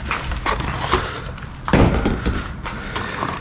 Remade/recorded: remade